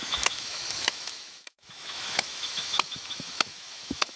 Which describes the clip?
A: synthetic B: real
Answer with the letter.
A